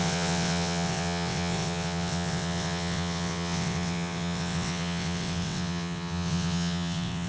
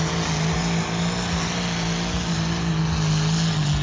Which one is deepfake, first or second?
first